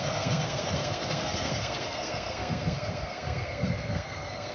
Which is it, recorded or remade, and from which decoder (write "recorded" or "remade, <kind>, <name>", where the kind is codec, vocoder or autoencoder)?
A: remade, codec, SNAC